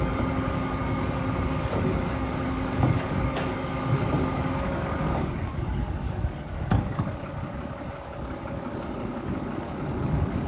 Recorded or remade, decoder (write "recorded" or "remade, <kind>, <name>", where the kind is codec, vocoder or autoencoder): remade, codec, DAC